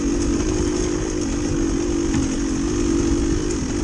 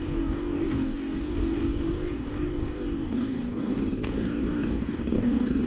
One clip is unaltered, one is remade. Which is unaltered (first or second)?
first